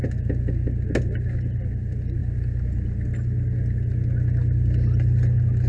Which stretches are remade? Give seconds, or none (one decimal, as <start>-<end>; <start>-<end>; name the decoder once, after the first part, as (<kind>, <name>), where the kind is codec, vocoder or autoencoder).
none